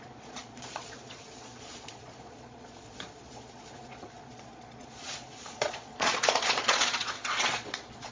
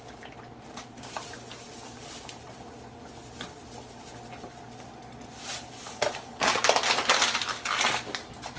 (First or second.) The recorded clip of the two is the second